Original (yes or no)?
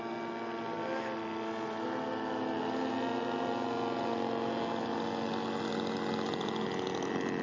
yes